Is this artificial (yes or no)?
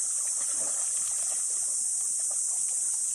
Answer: no